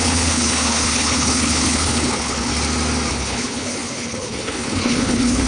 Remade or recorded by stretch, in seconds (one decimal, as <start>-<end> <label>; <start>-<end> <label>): 0.0-2.5 remade; 2.5-3.1 recorded; 3.1-5.5 remade